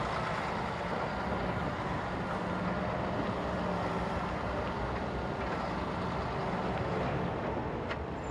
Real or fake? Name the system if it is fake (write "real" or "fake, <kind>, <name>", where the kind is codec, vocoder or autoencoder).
real